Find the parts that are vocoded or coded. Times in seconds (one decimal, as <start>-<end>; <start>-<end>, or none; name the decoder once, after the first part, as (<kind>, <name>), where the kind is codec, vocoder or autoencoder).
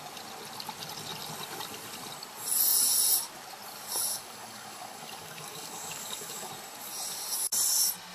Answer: 4.1-6.5 (codec, DAC)